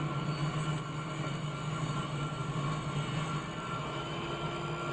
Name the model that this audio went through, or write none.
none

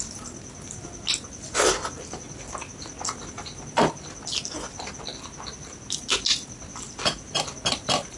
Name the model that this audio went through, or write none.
none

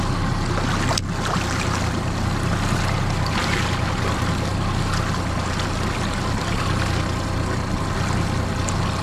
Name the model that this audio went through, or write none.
none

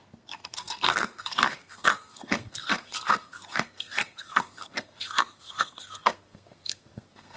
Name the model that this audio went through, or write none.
codec, SNAC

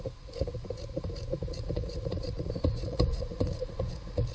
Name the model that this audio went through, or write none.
vocoder, Vocos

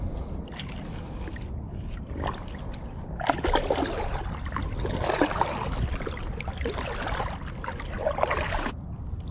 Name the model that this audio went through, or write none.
none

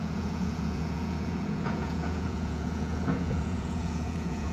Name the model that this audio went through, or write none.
vocoder, Vocos